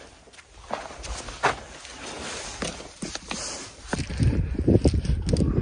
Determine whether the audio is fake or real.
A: real